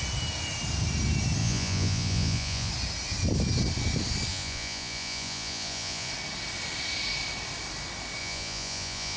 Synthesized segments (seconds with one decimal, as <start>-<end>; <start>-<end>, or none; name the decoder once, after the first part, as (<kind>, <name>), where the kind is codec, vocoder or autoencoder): 1.4-2.7 (vocoder, Vocos); 4.3-6.1; 8.2-9.2